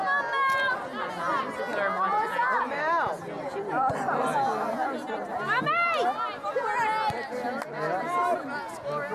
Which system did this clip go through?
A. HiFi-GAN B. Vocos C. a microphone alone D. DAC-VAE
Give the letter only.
C